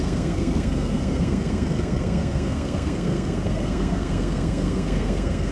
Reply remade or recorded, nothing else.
remade